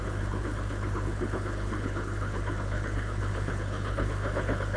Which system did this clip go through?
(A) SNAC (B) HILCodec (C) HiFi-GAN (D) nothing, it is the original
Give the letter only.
B